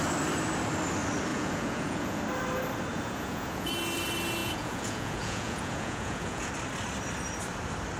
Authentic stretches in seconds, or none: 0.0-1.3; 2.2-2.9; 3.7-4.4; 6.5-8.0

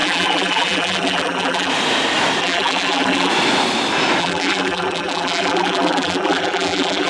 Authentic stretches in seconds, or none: 1.7-2.4; 3.3-4.2

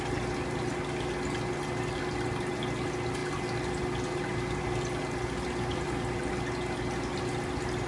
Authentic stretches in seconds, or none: 0.0-7.9

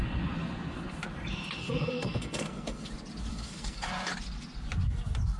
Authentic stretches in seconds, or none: 0.0-1.6; 2.9-3.3; 3.9-5.4

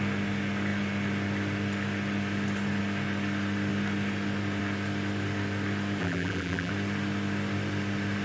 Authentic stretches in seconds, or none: 0.0-6.0; 6.7-8.2

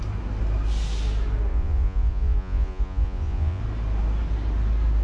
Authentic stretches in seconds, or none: 0.0-1.5; 3.6-5.0